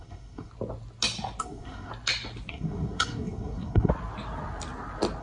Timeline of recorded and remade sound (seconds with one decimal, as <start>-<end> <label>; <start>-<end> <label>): 0.0-0.5 remade; 0.5-1.4 recorded; 1.4-1.9 remade; 1.9-2.5 recorded; 2.5-3.9 remade; 3.9-5.2 recorded